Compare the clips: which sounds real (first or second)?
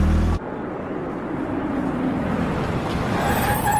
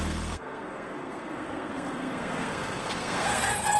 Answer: first